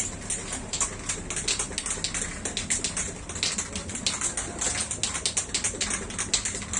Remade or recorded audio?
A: recorded